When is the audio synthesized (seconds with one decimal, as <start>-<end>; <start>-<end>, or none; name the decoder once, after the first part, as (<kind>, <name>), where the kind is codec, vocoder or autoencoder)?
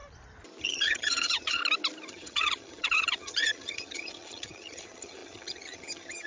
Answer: 0.6-1.6 (vocoder, HiFi-GAN); 2.1-6.3